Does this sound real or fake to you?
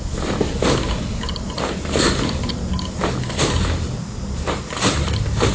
real